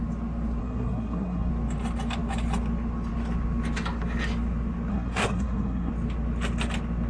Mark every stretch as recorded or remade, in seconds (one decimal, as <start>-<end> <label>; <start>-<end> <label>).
0.0-0.6 recorded; 0.6-1.5 remade; 1.5-4.9 recorded; 4.9-5.9 remade; 5.9-7.1 recorded